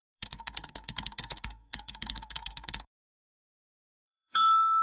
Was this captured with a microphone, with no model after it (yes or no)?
no